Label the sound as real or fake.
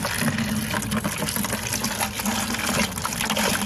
real